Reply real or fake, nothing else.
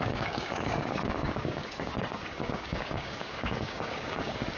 fake